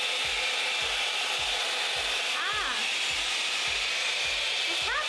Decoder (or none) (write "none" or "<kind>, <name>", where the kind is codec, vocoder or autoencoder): none